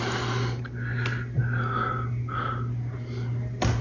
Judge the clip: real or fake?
real